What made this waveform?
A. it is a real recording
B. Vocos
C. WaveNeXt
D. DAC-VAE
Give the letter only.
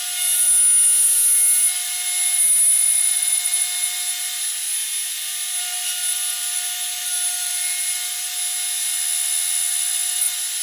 A